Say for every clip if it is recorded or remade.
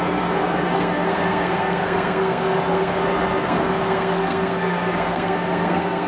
remade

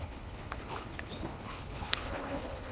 remade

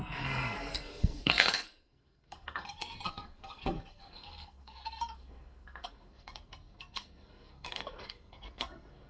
remade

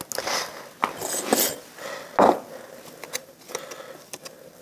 recorded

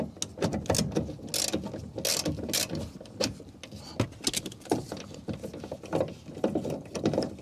recorded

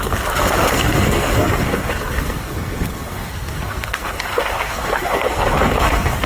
remade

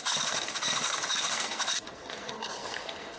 remade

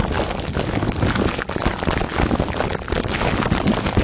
recorded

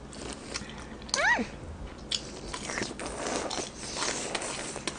recorded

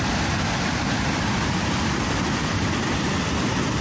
recorded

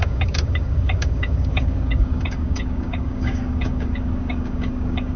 remade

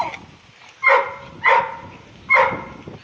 recorded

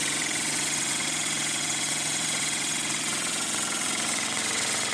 remade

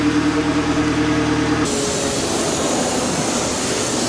recorded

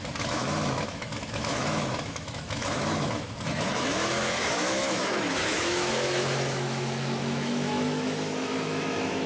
remade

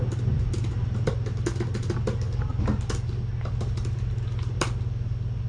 recorded